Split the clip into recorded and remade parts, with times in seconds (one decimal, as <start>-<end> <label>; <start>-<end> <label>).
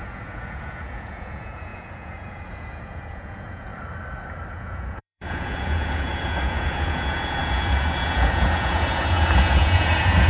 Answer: 0.0-3.7 remade; 3.7-4.5 recorded; 4.5-10.3 remade